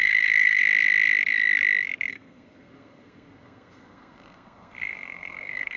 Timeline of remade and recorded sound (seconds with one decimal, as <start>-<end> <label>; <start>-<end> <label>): 0.0-0.6 remade; 0.6-2.1 recorded; 2.1-5.8 remade